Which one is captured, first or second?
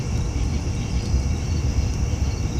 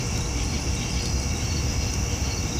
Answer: second